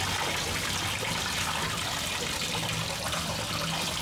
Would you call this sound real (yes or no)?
yes